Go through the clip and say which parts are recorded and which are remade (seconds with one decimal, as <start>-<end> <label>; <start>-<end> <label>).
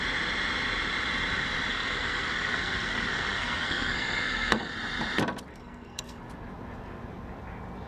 0.0-1.7 recorded; 1.7-4.7 remade; 4.7-5.5 recorded; 5.5-6.2 remade; 6.2-7.9 recorded